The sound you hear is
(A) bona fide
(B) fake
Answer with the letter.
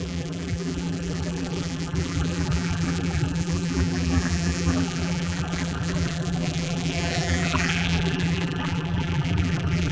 B